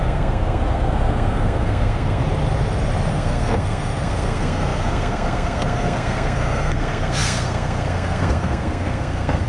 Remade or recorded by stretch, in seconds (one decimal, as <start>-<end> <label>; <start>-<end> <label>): 0.0-2.2 remade; 2.2-3.1 recorded; 3.1-9.5 remade